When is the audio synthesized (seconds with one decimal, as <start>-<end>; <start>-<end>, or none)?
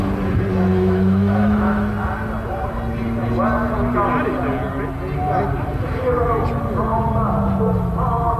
0.7-1.9